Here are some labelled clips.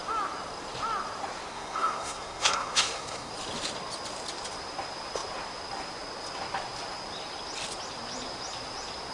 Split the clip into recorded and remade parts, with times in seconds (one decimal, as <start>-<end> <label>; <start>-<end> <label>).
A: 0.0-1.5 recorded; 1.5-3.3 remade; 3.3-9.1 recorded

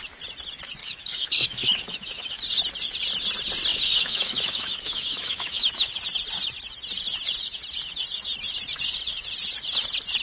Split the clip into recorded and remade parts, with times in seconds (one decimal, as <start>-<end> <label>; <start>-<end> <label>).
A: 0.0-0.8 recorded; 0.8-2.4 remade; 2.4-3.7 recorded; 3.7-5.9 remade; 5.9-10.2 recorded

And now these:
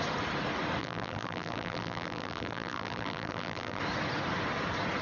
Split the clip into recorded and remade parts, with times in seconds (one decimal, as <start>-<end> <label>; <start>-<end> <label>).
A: 0.0-0.8 recorded; 0.8-3.8 remade; 3.8-5.0 recorded

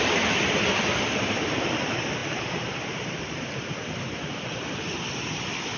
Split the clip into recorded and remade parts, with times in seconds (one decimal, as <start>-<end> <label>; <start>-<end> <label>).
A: 0.0-2.2 recorded; 2.2-5.8 remade

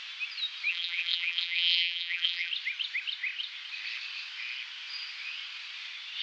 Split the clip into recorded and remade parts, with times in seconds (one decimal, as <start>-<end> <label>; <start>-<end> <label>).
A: 0.0-0.7 recorded; 0.7-2.5 remade; 2.5-6.2 recorded